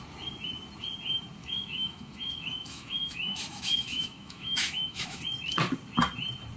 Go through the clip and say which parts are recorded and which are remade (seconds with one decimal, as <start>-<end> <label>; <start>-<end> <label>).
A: 0.0-1.4 recorded; 1.4-5.2 remade; 5.2-6.6 recorded